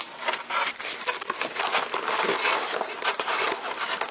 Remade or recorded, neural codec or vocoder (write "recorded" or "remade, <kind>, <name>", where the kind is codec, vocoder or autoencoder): recorded